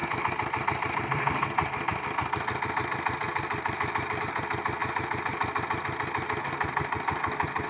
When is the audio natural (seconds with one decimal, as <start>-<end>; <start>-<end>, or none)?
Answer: 4.2-4.8